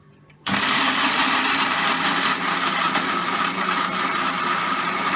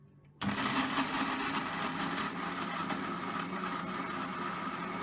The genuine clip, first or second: second